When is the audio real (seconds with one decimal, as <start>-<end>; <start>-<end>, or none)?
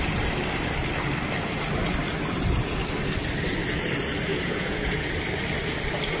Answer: 0.0-4.3; 5.1-6.2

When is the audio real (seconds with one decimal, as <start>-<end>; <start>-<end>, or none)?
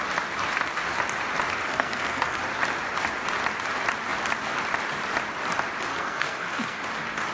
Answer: 0.0-1.7; 2.4-5.9; 6.8-7.3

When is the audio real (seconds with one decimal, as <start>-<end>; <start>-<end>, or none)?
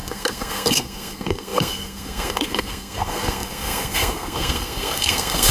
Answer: none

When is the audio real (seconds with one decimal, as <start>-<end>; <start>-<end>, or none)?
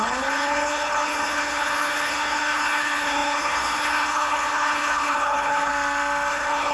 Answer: 5.7-6.3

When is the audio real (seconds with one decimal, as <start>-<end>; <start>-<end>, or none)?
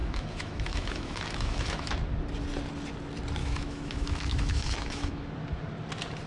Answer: 1.9-3.4; 5.3-6.3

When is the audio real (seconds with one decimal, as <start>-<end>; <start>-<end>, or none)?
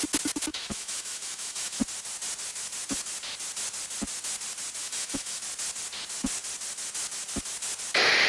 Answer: 0.0-0.5; 1.8-4.8; 5.4-8.3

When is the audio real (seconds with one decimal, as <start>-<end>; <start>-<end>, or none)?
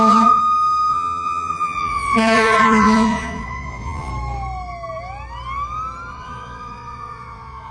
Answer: 0.4-0.9; 4.1-6.1